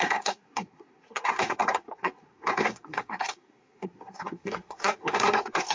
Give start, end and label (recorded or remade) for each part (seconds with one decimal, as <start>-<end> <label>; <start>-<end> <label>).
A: 0.0-5.7 remade

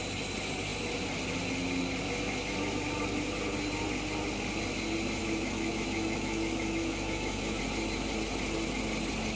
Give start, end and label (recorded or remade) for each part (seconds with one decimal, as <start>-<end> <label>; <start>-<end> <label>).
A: 0.0-5.2 recorded; 5.2-7.6 remade; 7.6-9.4 recorded

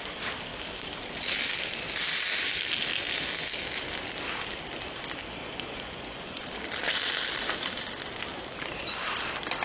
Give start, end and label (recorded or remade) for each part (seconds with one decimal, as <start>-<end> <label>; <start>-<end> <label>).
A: 0.0-5.4 recorded; 5.4-6.5 remade; 6.5-9.6 recorded